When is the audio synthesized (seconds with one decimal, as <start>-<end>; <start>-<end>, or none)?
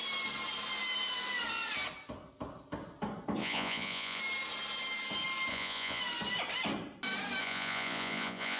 3.4-4.2; 5.5-6.0; 7.4-8.6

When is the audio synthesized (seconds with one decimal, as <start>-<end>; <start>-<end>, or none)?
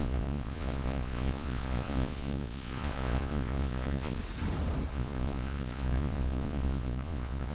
0.0-4.2; 4.9-7.5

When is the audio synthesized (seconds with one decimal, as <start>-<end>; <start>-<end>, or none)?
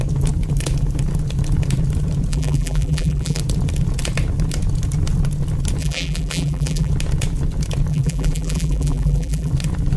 2.3-3.4; 5.8-6.9; 7.9-9.5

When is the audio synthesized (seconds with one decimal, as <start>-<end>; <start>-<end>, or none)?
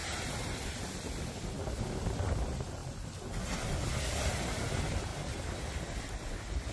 none